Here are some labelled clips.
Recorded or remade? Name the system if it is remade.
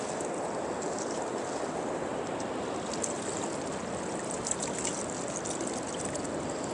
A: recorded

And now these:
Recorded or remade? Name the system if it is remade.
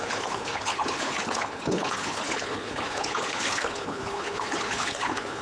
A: remade, codec, HILCodec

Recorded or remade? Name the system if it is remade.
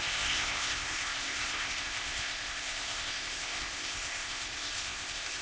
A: remade, codec, ZipCodec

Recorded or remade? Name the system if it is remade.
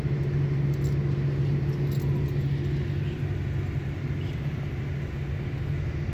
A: recorded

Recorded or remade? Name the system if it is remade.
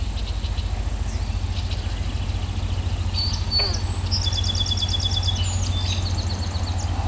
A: recorded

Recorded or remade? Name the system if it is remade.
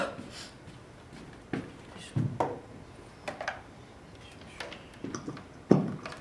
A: recorded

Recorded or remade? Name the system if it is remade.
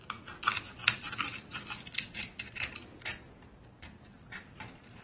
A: recorded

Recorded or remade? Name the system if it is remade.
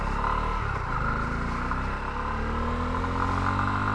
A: recorded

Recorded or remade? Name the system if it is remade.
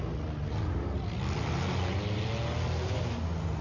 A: recorded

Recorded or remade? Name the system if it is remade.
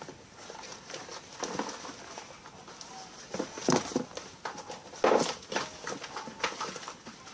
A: recorded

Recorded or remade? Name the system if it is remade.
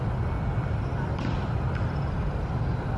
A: recorded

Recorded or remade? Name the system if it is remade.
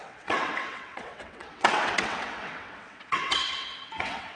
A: remade, vocoder, WaveNeXt